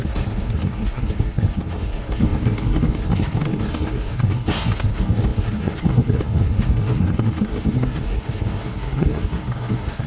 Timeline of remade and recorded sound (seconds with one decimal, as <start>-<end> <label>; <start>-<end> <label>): 0.0-10.1 remade